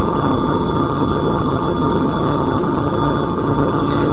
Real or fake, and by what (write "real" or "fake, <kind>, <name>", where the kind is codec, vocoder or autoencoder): fake, vocoder, HiFi-GAN